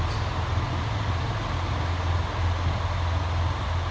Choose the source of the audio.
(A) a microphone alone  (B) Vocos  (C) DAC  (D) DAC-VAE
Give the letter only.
A